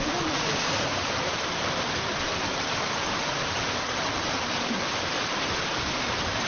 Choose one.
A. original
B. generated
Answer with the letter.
B